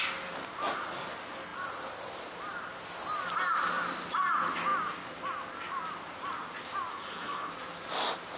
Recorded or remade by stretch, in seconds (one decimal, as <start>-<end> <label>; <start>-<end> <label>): 0.0-6.9 recorded; 6.9-7.5 remade; 7.5-8.4 recorded

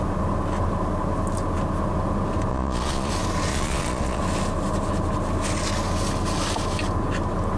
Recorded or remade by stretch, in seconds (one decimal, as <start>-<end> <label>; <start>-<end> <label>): 0.0-2.5 recorded; 2.5-3.1 remade; 3.1-3.5 recorded; 3.5-4.2 remade; 4.2-7.6 recorded

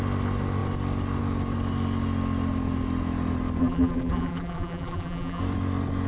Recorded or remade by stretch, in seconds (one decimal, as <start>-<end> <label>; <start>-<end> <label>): 0.0-3.6 recorded; 3.6-5.4 remade; 5.4-6.1 recorded

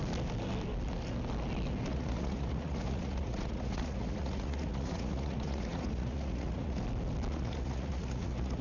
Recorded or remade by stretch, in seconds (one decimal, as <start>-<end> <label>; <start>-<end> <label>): 0.0-1.9 recorded; 1.9-6.8 remade; 6.8-7.3 recorded; 7.3-8.6 remade

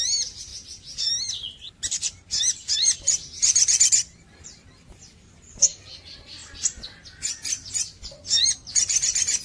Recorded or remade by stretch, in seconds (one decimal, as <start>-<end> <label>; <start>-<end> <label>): 0.0-0.5 remade; 0.5-2.4 recorded; 2.4-6.4 remade; 6.4-7.7 recorded; 7.7-9.4 remade

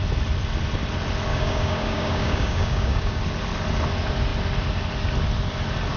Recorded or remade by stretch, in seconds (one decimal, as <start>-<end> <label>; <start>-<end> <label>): 0.0-1.3 recorded; 1.3-3.2 remade; 3.2-6.0 recorded

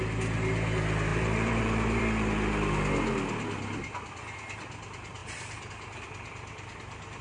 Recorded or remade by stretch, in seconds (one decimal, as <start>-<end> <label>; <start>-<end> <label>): 0.0-1.1 recorded; 1.1-2.0 remade; 2.0-5.2 recorded; 5.2-5.7 remade; 5.7-7.2 recorded